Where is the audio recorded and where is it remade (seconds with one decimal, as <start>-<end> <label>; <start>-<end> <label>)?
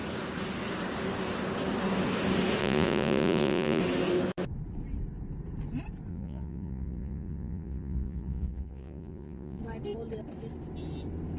0.0-2.6 recorded; 2.6-3.8 remade; 3.8-6.1 recorded; 6.1-9.6 remade; 9.6-11.4 recorded